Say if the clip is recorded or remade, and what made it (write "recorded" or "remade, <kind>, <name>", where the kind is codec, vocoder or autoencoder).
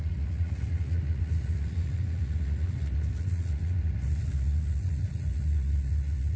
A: remade, vocoder, Vocos